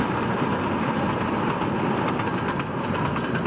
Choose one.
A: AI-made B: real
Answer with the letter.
B